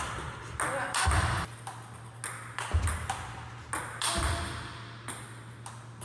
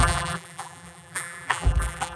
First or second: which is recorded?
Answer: first